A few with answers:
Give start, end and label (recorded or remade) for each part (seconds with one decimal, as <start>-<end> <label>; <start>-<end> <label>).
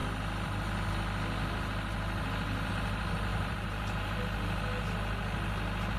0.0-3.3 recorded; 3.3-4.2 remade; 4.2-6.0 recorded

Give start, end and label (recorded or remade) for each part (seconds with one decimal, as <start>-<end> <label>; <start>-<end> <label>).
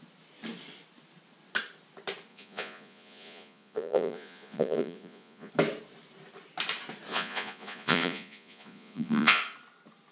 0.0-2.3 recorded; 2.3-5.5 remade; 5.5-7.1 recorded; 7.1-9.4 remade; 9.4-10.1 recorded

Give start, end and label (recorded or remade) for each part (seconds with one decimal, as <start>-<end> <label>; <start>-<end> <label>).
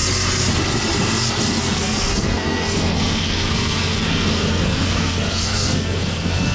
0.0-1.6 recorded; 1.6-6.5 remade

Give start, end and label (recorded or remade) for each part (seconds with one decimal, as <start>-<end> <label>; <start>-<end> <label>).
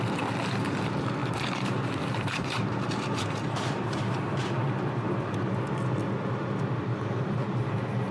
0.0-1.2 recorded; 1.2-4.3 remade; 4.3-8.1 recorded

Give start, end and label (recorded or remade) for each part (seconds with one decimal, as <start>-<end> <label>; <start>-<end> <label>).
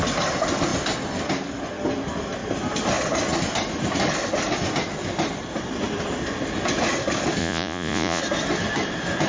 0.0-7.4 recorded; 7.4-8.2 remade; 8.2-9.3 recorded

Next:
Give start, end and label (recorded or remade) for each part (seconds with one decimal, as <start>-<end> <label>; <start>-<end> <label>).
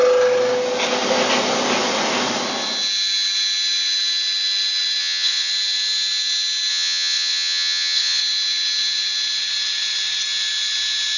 0.0-5.0 recorded; 5.0-5.5 remade; 5.5-6.7 recorded; 6.7-8.2 remade; 8.2-11.2 recorded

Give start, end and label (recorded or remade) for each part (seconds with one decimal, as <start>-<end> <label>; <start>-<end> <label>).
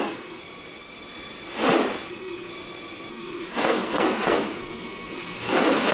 0.0-0.4 remade; 0.4-2.1 recorded; 2.1-2.5 remade; 2.5-3.1 recorded; 3.1-5.9 remade